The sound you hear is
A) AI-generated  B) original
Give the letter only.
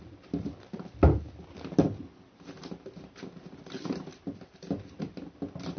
B